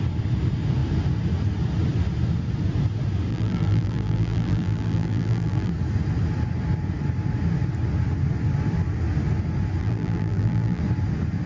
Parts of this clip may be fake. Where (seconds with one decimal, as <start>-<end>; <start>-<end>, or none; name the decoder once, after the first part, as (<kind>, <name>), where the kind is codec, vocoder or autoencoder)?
3.3-5.7 (vocoder, BigVGAN v2); 9.8-10.8